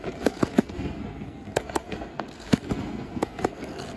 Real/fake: fake